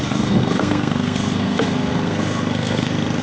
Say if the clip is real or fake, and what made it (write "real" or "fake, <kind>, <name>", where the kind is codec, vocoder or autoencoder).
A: fake, codec, SNAC